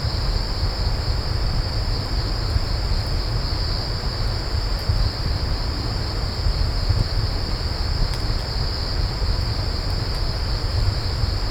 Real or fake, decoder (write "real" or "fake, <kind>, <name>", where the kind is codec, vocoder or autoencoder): real